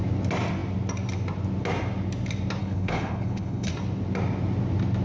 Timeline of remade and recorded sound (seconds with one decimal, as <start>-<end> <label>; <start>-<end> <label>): 0.0-2.6 recorded; 2.6-3.7 remade; 3.7-5.0 recorded